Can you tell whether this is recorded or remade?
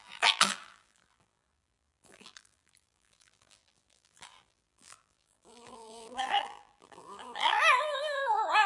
remade